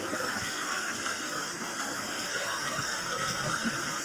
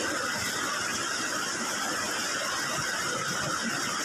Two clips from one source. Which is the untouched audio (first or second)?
second